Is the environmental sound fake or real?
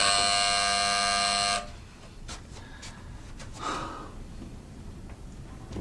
real